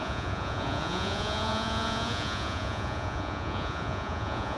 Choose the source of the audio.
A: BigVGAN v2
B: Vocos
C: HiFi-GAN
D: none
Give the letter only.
B